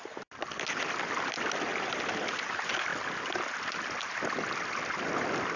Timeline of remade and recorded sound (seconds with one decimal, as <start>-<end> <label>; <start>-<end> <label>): 0.0-5.6 recorded